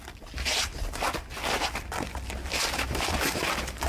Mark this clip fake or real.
real